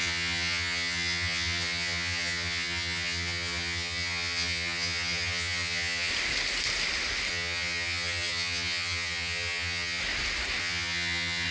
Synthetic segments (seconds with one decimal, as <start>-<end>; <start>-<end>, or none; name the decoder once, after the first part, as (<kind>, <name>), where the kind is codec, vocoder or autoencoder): 0.0-6.1 (vocoder, HiFi-GAN); 7.3-10.0; 10.6-11.5